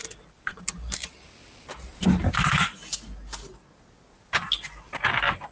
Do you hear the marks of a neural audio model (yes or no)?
no